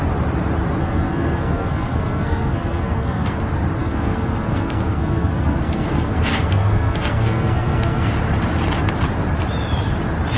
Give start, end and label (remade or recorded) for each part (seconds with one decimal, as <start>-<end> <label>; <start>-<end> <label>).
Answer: 0.0-0.8 recorded; 0.8-3.4 remade; 3.4-3.8 recorded; 3.8-8.1 remade; 8.1-10.4 recorded